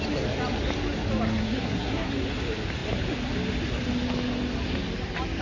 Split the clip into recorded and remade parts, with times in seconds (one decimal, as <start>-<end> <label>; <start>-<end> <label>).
0.0-1.4 recorded; 1.4-2.1 remade; 2.1-5.4 recorded